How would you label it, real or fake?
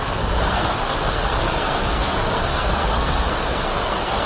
fake